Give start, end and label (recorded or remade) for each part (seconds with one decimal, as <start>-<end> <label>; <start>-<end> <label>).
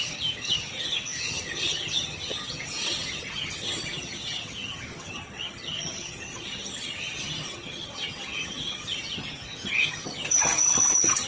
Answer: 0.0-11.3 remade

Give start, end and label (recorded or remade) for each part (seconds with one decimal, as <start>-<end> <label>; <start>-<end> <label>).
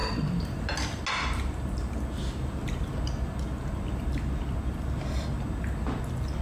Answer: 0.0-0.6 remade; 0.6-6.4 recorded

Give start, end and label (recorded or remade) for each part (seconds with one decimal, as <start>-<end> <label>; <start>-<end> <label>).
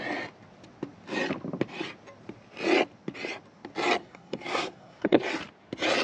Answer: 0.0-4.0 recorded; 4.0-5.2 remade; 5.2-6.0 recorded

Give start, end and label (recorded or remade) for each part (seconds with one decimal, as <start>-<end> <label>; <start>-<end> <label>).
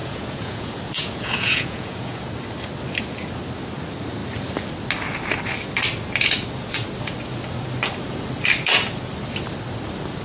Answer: 0.0-2.2 remade; 2.2-10.2 recorded